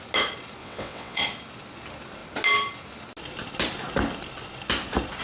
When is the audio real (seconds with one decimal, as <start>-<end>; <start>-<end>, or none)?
0.0-0.6; 1.2-5.2